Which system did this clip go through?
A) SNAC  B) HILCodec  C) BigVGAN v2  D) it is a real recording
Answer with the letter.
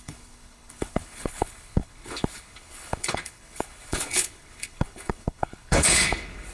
B